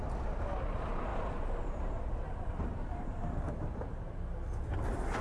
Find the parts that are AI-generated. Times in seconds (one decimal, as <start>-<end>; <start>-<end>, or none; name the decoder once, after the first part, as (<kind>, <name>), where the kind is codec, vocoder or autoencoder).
0.0-3.2 (vocoder, BigVGAN v2); 4.6-5.2